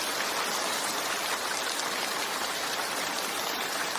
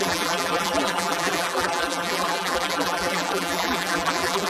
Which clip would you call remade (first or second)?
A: second